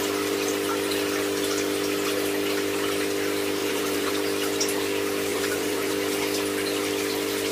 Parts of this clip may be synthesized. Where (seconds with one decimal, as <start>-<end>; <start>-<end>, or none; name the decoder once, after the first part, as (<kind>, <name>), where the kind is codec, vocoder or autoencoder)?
3.6-4.1 (vocoder, BigVGAN v2); 5.3-5.9